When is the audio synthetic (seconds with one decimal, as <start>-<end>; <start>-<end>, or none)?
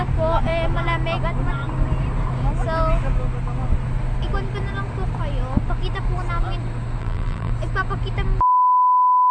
7.0-7.5